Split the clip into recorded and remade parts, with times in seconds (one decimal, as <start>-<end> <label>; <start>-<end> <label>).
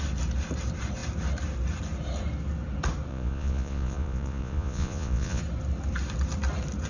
0.0-3.1 recorded; 3.1-5.4 remade; 5.4-6.9 recorded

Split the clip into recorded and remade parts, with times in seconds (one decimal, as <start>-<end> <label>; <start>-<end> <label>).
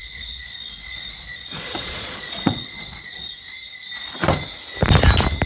0.0-3.3 remade; 3.3-5.5 recorded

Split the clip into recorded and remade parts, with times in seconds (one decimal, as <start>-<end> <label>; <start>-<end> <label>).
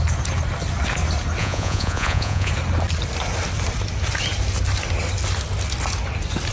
0.0-1.4 recorded; 1.4-2.5 remade; 2.5-6.5 recorded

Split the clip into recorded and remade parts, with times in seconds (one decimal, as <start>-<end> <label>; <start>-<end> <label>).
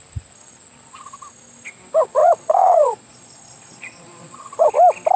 0.0-2.2 recorded; 2.2-4.7 remade; 4.7-5.2 recorded